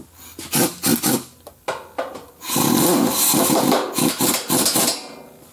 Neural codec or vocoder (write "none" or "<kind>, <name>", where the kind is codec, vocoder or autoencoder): none